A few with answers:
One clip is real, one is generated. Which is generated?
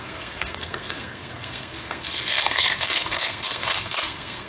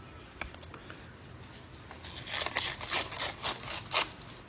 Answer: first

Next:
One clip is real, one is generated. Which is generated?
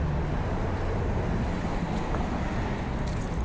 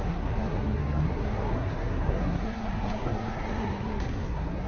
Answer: second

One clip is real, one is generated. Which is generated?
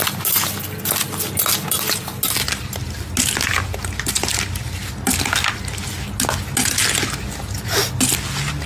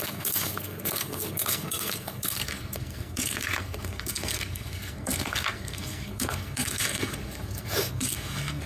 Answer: second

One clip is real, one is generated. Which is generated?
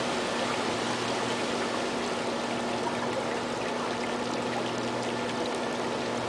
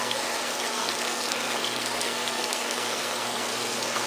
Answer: second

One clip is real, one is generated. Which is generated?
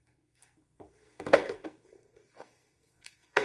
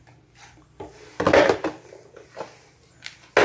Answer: first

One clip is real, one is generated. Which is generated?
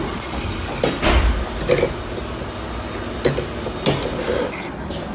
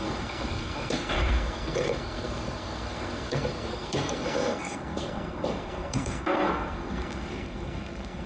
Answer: second